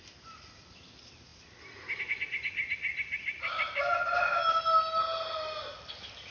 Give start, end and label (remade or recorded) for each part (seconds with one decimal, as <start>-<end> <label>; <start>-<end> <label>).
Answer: 0.0-6.3 recorded